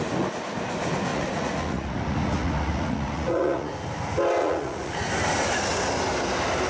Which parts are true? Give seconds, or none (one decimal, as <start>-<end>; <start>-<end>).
0.0-1.1; 3.7-4.4; 5.1-6.7

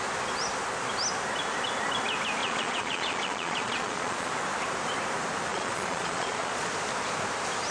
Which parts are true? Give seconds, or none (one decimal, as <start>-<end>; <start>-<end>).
0.0-2.4; 4.3-5.5; 6.7-7.7

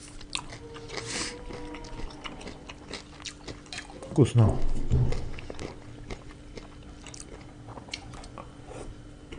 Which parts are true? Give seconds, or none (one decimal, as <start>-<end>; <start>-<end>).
0.0-7.7; 8.6-9.4

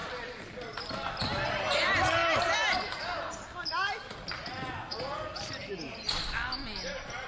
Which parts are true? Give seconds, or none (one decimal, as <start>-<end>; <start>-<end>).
0.0-7.3

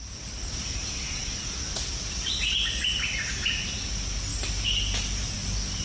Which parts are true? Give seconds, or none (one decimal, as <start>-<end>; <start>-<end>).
0.0-5.8